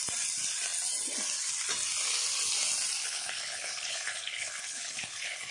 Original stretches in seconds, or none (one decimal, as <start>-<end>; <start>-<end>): 0.0-3.0